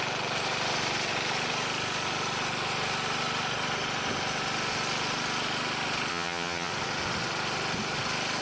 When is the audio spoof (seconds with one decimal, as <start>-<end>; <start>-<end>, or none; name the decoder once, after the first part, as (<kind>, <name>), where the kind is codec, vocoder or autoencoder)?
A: 6.1-6.7 (vocoder, HiFi-GAN)